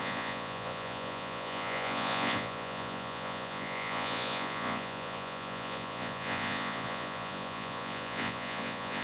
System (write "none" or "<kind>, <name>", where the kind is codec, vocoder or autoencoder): vocoder, Vocos